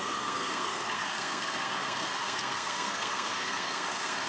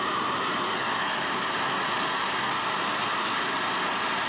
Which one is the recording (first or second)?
second